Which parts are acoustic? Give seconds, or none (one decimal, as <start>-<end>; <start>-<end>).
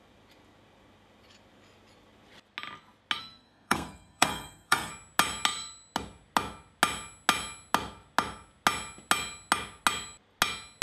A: 0.0-3.2; 4.9-10.8